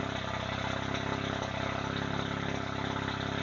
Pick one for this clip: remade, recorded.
recorded